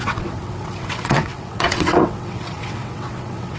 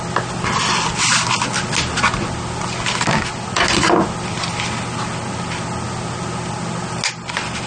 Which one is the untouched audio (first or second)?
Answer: second